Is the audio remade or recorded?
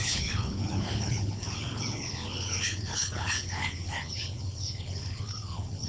remade